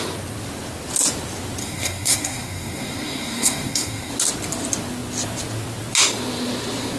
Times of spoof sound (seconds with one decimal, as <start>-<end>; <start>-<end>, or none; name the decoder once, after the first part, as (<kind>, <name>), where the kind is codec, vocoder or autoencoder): 1.6-4.1 (codec, SNAC)